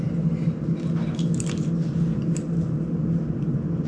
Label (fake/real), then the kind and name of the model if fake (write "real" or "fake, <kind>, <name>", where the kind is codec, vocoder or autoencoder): real